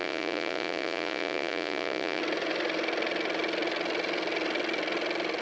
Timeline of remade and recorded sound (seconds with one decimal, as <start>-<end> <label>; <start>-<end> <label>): 0.0-2.2 remade; 2.2-5.4 recorded